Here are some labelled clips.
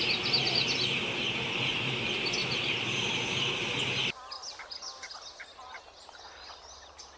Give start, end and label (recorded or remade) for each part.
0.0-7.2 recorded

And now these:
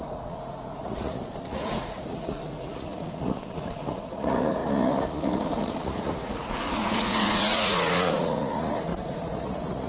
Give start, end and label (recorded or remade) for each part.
0.0-9.9 remade

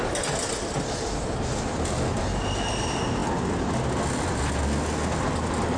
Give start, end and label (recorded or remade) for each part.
0.0-5.8 recorded

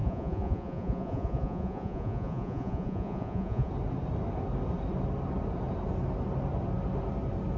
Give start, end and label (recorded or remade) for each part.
0.0-3.7 remade; 3.7-7.6 recorded

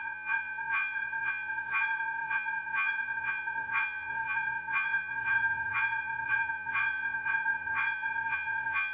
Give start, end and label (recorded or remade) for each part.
0.0-8.9 remade

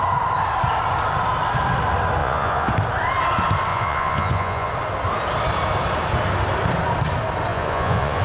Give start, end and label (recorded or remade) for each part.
0.0-2.2 recorded; 2.2-2.7 remade; 2.7-3.7 recorded; 3.7-4.7 remade; 4.7-7.5 recorded; 7.5-8.2 remade